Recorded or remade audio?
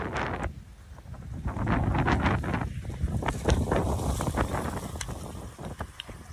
recorded